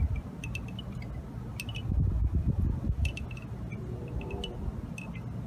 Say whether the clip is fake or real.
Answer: real